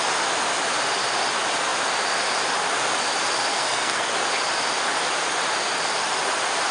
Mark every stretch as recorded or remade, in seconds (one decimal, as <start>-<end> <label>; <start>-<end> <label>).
0.0-3.5 recorded; 3.5-4.1 remade; 4.1-6.7 recorded